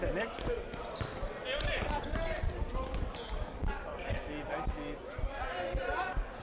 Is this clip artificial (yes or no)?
no